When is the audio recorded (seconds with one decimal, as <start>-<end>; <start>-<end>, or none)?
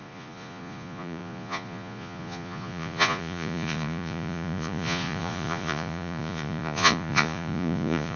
none